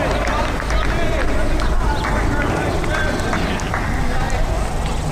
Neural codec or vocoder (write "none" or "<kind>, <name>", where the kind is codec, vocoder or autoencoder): none